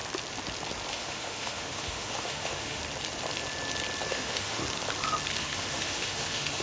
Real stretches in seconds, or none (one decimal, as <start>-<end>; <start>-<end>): 0.0-0.9; 2.8-4.1; 4.6-5.4